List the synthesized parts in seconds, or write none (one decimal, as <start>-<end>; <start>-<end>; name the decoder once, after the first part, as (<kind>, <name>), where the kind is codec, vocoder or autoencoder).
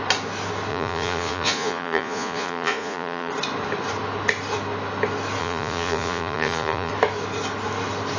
0.7-3.3 (vocoder, Vocos); 5.4-6.9